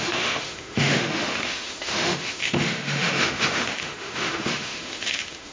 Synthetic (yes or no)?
yes